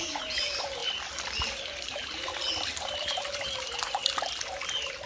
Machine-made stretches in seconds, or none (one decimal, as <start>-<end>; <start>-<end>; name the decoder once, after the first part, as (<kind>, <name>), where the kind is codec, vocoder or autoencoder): 0.0-0.8 (vocoder, BigVGAN v2); 1.6-4.0